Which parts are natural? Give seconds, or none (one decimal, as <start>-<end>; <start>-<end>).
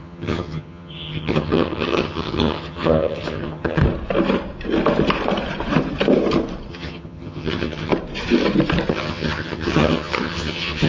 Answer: 3.8-6.7; 7.9-8.9